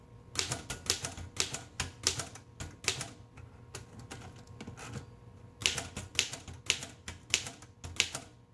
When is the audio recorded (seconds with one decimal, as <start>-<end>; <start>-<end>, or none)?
0.0-8.5